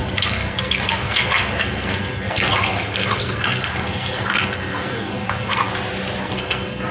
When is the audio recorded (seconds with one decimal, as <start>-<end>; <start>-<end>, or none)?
5.7-6.2